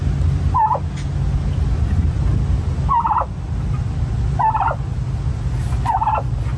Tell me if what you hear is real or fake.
real